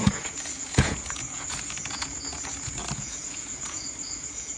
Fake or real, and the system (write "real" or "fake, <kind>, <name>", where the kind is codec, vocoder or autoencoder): fake, vocoder, Vocos